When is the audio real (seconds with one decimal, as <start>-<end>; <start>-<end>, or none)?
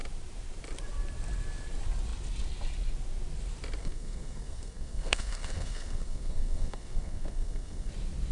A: 0.0-3.8; 7.9-8.3